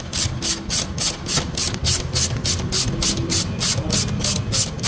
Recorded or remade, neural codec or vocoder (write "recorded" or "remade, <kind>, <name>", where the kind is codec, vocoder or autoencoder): recorded